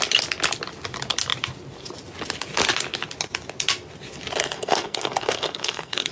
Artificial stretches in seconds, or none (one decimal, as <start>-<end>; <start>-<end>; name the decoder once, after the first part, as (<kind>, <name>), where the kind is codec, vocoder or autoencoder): 4.4-6.1 (codec, SNAC)